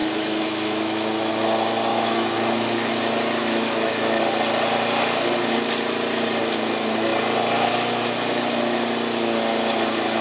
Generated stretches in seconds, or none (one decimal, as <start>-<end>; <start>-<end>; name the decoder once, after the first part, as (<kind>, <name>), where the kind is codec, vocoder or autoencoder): 0.0-1.3 (autoencoder, DAC-VAE); 1.9-3.0; 3.4-4.2

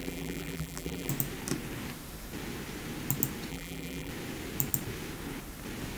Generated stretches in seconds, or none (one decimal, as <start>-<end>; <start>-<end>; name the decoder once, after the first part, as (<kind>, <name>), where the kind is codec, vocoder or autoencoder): 0.0-1.1 (vocoder, BigVGAN v2); 3.5-4.1